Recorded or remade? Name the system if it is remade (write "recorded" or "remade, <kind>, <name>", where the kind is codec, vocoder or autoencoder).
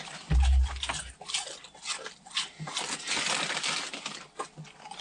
recorded